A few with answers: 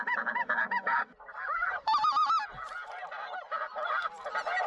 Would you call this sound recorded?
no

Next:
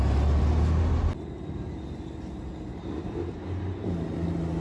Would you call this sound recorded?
yes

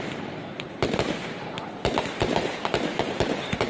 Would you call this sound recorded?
yes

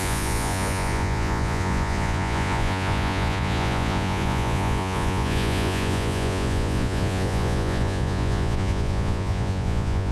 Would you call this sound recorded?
no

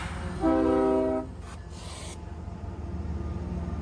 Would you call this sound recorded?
yes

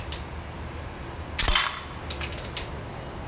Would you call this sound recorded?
yes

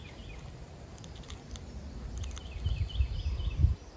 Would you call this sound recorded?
yes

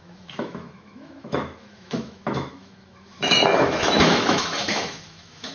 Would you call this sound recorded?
no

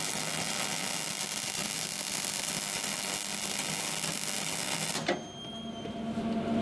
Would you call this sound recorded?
yes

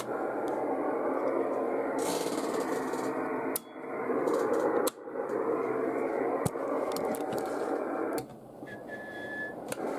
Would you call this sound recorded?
yes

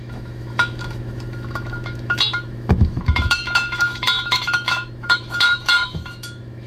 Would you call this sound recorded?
no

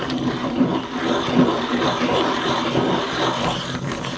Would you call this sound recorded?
yes